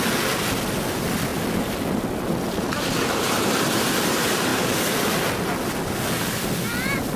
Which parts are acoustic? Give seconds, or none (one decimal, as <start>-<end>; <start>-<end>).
0.0-7.2